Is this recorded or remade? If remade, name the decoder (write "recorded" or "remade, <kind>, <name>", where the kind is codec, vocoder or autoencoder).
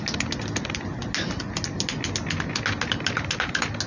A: recorded